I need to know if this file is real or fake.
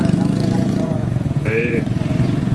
fake